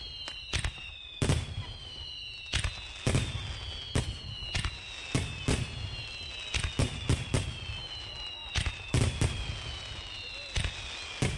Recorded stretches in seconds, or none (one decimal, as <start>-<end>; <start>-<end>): 0.0-11.4